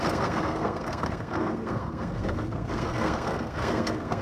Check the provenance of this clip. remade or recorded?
remade